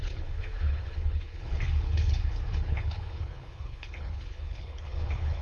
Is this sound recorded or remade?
remade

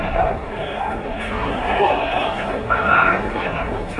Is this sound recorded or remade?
remade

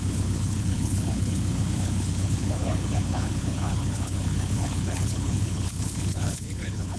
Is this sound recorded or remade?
remade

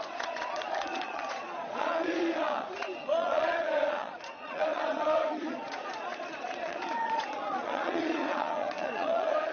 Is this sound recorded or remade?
remade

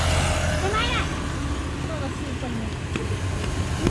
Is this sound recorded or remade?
recorded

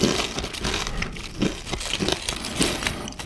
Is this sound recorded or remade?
recorded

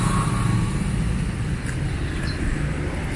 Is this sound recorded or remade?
recorded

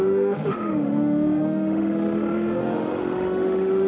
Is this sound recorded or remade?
remade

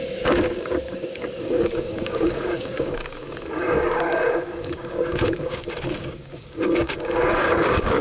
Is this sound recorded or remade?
remade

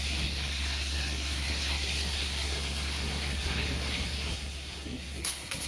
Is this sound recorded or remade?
remade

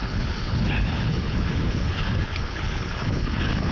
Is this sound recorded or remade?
remade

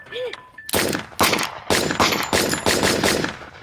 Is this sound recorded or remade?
recorded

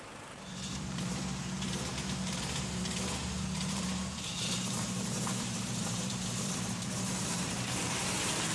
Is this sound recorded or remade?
remade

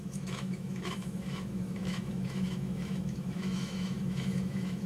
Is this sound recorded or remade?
remade